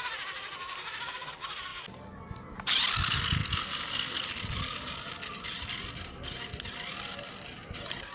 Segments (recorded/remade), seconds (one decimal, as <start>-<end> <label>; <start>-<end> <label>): 0.0-3.4 recorded; 3.4-5.9 remade; 5.9-8.1 recorded